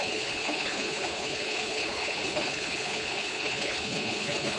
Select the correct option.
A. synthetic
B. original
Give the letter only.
A